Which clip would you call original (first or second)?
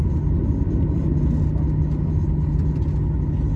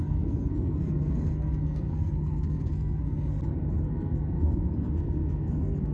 first